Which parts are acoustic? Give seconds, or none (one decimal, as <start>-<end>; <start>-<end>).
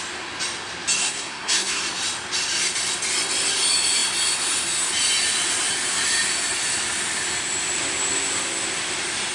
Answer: 0.0-1.0; 1.8-9.3